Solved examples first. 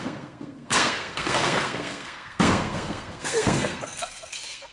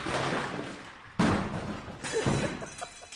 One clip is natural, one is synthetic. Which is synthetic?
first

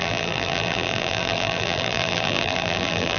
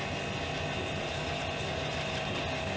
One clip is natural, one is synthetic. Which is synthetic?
first